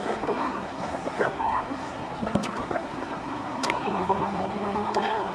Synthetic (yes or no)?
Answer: yes